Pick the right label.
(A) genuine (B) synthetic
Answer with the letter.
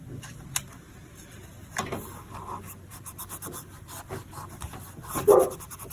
A